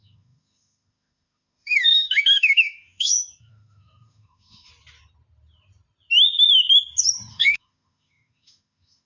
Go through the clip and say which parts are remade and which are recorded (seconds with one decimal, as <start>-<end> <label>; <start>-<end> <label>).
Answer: 0.0-4.7 remade; 4.7-7.3 recorded; 7.3-9.1 remade